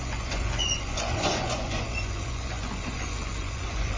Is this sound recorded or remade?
remade